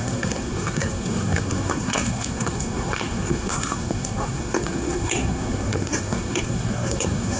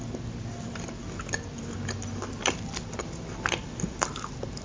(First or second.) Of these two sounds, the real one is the second